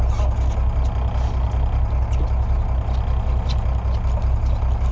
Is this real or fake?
real